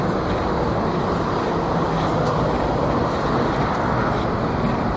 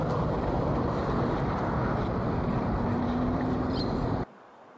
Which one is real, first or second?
first